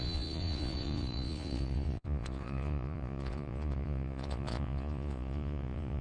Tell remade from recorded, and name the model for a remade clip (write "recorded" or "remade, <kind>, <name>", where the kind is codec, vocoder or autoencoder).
remade, vocoder, Vocos